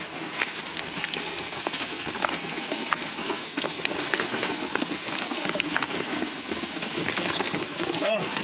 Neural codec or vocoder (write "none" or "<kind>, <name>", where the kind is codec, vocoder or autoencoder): codec, SNAC